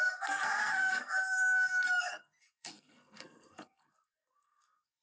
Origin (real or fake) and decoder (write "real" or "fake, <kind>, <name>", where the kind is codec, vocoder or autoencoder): fake, codec, SNAC